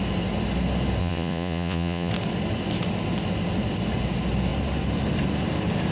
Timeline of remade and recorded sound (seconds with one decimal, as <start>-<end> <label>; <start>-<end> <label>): 0.0-1.0 recorded; 1.0-2.1 remade; 2.1-5.9 recorded